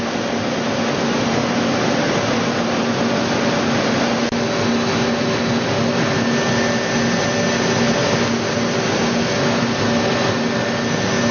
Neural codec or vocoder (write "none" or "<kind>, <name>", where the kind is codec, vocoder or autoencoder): none